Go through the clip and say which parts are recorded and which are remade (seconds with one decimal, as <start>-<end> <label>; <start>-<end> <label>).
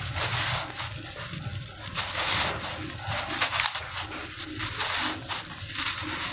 0.0-6.3 recorded